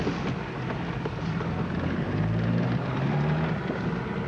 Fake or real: real